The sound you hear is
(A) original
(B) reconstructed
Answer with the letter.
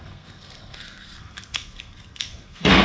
B